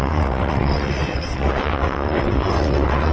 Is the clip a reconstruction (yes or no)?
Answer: yes